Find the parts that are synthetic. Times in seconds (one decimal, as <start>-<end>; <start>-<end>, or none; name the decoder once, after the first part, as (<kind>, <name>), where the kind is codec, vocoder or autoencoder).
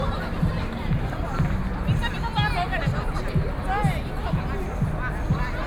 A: 0.0-2.0 (vocoder, BigVGAN v2)